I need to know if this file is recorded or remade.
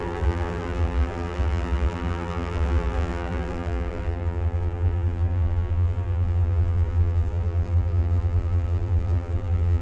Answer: remade